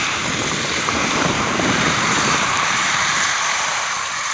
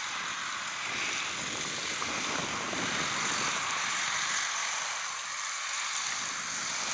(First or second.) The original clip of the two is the second